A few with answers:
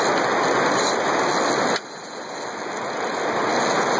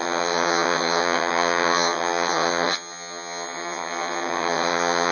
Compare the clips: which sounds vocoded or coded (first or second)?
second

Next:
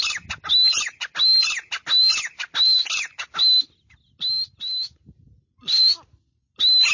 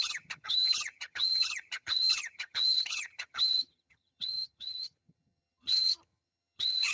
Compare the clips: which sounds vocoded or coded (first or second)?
second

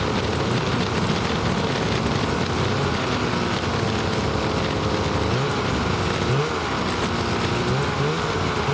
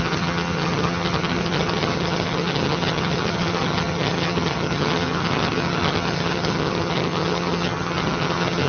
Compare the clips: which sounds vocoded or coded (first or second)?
second